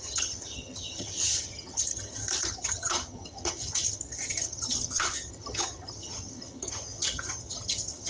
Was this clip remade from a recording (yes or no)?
yes